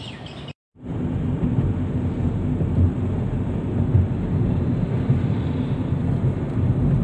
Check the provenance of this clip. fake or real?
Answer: real